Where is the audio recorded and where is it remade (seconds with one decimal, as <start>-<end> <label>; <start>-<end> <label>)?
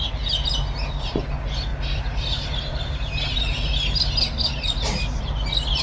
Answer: 0.0-5.8 recorded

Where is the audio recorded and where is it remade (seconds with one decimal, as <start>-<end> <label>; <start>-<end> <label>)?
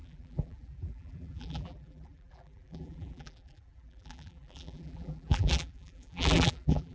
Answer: 0.0-6.9 remade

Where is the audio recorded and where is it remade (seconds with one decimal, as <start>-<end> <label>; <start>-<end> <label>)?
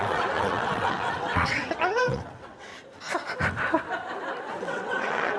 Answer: 0.0-2.7 remade; 2.7-4.6 recorded; 4.6-5.4 remade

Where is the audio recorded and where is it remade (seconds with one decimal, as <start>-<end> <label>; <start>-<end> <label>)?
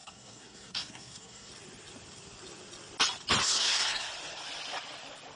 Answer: 0.0-1.5 remade; 1.5-3.4 recorded; 3.4-4.1 remade; 4.1-5.4 recorded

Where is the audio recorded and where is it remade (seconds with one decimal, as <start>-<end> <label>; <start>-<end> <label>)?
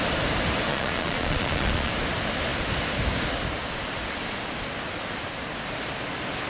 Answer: 0.0-0.7 recorded; 0.7-1.9 remade; 1.9-6.5 recorded